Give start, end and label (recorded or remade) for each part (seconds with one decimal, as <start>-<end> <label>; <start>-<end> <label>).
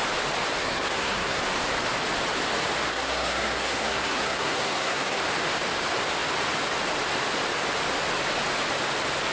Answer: 0.0-0.6 recorded; 0.6-1.4 remade; 1.4-2.9 recorded; 2.9-5.2 remade; 5.2-9.3 recorded